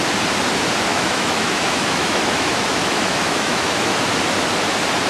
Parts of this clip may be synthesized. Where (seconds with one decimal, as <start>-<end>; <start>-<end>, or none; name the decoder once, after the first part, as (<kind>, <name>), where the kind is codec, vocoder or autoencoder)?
0.9-4.0 (autoencoder, DAC-VAE)